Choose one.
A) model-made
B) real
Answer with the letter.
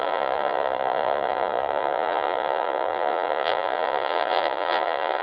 A